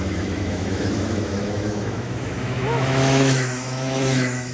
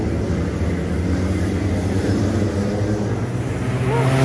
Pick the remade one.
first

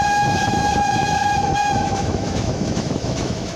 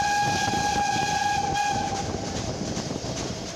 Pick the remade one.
first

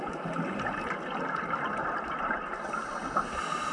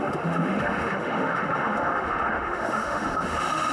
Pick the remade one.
second